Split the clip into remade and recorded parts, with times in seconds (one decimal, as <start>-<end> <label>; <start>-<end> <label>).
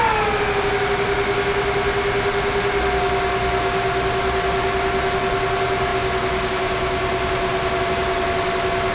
0.0-8.9 recorded